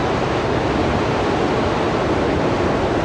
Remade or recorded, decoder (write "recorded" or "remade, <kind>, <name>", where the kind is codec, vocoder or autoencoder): recorded